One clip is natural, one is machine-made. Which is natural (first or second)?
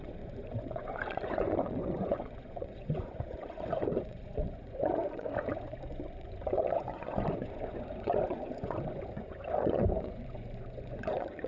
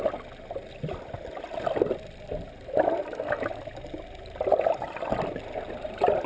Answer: second